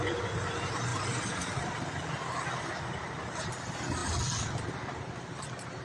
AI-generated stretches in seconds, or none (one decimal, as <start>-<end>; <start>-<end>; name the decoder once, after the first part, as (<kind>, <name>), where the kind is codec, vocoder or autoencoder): none